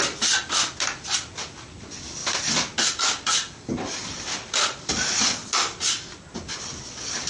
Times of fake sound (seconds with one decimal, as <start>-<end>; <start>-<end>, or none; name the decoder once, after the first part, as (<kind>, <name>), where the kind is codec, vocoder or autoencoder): none

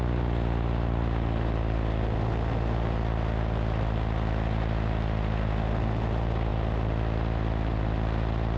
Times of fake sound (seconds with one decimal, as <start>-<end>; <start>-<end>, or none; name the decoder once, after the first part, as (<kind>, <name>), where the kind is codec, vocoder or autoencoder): none

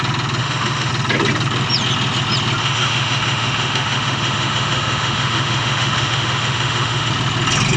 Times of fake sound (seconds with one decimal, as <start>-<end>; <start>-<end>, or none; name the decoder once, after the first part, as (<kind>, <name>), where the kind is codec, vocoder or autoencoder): 0.4-0.9 (autoencoder, DAC-VAE); 2.6-7.1

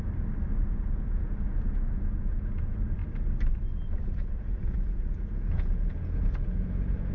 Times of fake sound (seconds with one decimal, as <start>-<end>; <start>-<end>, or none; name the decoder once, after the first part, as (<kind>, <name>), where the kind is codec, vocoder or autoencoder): 0.6-3.0 (vocoder, Vocos); 4.2-7.1